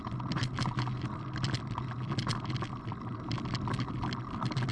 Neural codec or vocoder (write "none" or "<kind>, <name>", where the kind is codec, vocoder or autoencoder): none